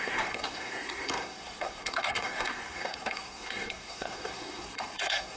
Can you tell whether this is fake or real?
fake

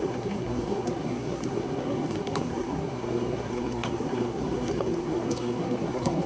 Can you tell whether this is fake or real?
fake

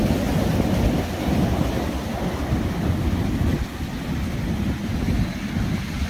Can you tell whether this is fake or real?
real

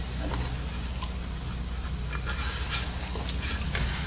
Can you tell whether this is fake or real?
real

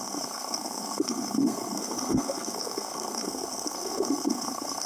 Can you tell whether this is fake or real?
fake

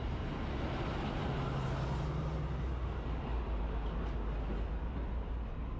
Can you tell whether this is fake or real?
real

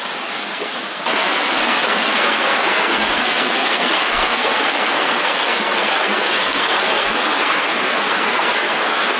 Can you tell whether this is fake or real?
fake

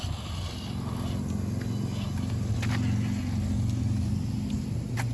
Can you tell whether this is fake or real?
real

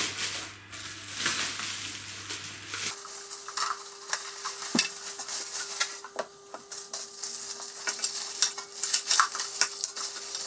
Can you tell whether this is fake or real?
real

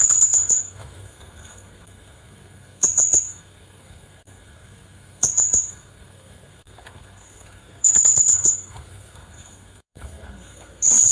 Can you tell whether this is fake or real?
fake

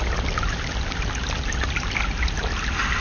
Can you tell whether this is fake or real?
real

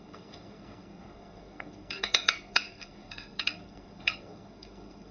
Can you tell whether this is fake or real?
fake